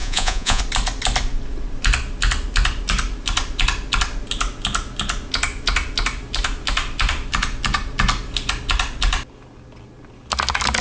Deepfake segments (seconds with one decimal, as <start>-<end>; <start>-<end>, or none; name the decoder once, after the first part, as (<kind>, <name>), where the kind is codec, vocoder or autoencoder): 0.0-0.6 (vocoder, Vocos)